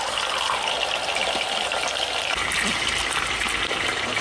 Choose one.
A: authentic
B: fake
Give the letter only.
A